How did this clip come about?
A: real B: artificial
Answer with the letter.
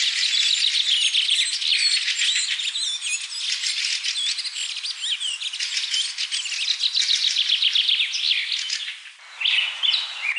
A